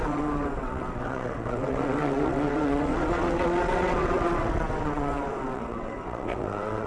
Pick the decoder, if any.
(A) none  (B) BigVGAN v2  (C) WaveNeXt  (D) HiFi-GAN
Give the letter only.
C